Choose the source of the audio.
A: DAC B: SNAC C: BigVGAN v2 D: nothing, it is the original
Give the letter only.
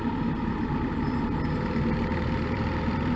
C